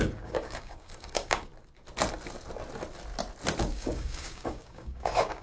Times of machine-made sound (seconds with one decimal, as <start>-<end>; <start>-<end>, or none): 0.0-1.5; 3.6-5.4